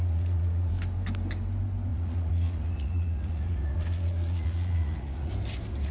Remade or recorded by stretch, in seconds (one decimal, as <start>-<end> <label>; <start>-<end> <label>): 0.0-0.7 remade; 0.7-1.9 recorded; 1.9-5.3 remade; 5.3-5.9 recorded

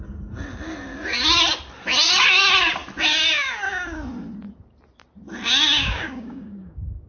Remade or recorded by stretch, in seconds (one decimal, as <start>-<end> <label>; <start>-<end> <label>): 0.0-5.8 recorded; 5.8-7.1 remade